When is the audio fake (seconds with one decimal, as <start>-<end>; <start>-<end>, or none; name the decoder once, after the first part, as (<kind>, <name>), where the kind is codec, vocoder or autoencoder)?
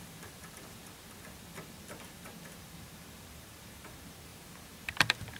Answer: 0.0-5.4 (vocoder, BigVGAN v2)